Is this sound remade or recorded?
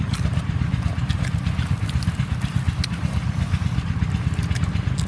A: recorded